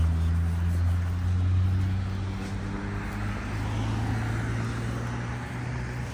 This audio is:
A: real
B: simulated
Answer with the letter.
A